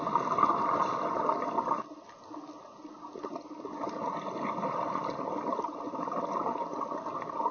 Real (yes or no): yes